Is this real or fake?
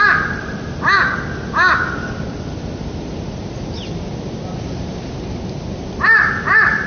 real